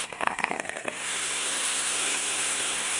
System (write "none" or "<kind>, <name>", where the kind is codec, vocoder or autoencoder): codec, SNAC